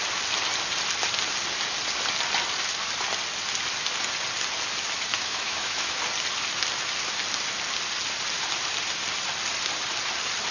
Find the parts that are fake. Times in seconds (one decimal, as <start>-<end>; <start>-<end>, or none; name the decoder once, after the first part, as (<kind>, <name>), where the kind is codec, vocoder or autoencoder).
5.1-6.0 (autoencoder, DAC-VAE)